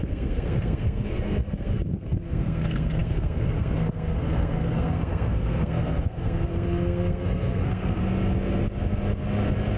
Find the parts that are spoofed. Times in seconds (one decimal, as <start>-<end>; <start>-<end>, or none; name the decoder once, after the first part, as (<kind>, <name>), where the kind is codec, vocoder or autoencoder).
0.0-8.0 (codec, SNAC)